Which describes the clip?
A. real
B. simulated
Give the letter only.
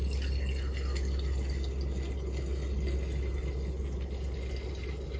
A